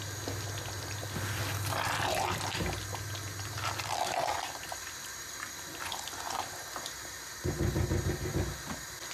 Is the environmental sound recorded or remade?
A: recorded